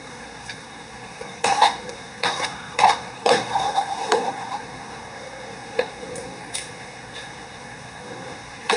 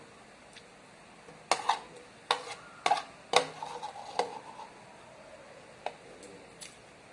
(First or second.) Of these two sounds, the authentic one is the second